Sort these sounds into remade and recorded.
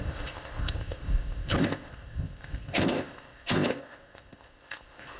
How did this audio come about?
remade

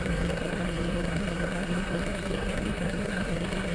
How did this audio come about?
remade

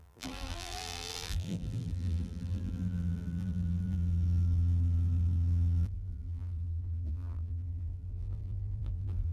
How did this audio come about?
remade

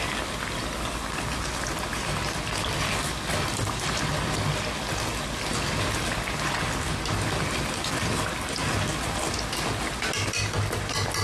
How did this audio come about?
recorded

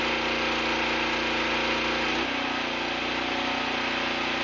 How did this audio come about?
recorded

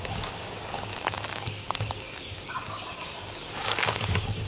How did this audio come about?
remade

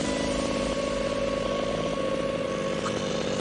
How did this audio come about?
recorded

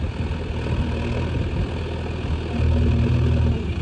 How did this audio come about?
recorded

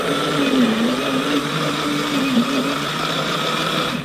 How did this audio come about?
remade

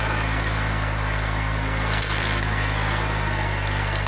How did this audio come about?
remade